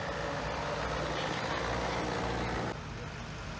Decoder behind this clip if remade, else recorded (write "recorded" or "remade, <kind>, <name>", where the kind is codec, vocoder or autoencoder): recorded